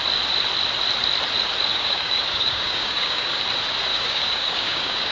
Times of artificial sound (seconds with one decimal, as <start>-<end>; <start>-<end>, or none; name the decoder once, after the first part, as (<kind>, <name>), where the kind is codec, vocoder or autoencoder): 1.7-3.4 (codec, DAC); 3.9-5.1